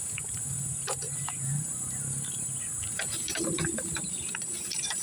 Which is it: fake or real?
fake